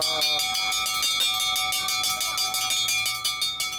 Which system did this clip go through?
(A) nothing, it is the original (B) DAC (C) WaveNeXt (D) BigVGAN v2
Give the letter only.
A